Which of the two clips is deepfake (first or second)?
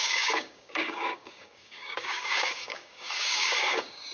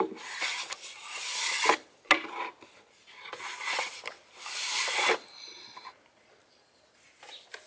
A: first